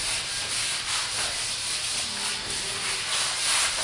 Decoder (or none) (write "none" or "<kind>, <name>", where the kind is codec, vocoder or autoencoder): none